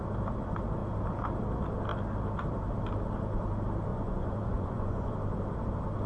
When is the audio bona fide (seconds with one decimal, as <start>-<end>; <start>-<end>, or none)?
0.0-3.9; 5.1-6.1